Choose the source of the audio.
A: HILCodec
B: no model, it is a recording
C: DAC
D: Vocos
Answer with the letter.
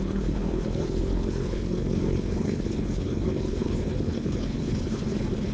A